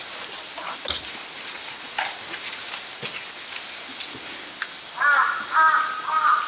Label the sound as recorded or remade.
recorded